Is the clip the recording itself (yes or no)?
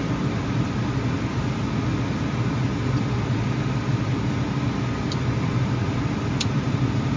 yes